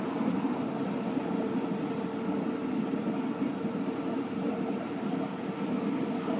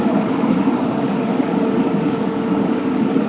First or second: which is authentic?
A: first